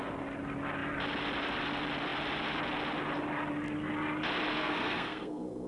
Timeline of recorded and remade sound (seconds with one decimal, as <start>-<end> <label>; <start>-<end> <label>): 0.0-4.5 recorded; 4.5-5.7 remade